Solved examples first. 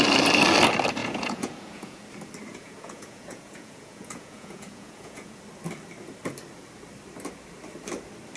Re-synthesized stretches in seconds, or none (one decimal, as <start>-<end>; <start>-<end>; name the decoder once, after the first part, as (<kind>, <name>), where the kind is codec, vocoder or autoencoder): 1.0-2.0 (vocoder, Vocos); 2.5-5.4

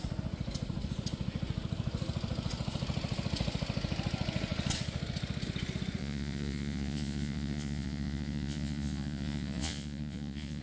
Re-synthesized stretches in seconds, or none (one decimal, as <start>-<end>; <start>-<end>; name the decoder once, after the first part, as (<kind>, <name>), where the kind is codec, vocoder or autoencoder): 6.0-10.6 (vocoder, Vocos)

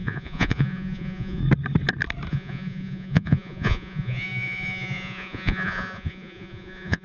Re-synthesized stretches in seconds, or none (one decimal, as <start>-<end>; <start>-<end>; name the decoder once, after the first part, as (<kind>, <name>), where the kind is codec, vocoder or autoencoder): 0.0-1.4 (vocoder, Vocos); 2.3-7.0

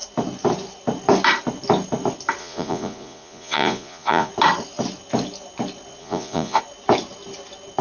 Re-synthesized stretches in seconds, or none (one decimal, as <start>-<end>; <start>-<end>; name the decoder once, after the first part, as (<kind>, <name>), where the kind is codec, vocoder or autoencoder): 2.4-4.3 (vocoder, Vocos); 6.0-6.6